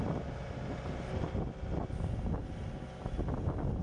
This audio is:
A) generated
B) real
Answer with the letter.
B